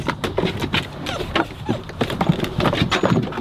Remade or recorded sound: recorded